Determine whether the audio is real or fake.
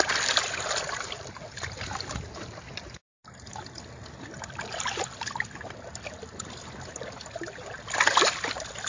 real